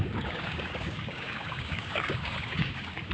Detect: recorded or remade remade